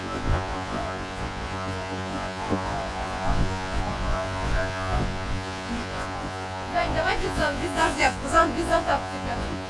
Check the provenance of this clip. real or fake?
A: fake